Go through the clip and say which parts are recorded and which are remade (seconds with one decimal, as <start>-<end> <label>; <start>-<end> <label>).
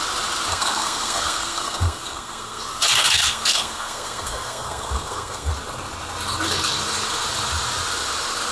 0.0-0.5 recorded; 0.5-2.6 remade; 2.6-3.0 recorded; 3.0-5.5 remade; 5.5-8.5 recorded